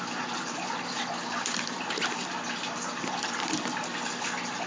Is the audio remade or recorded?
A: remade